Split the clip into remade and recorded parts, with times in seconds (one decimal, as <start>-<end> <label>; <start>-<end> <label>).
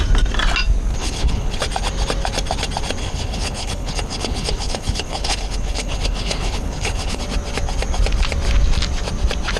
0.0-0.9 recorded; 0.9-1.6 remade; 1.6-3.0 recorded; 3.0-7.2 remade; 7.2-9.6 recorded